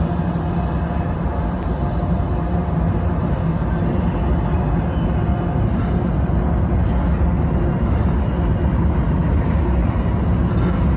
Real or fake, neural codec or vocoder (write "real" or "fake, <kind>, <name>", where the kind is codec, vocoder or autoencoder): real